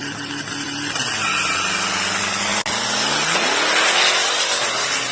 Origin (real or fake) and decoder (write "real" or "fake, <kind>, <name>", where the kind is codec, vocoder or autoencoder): real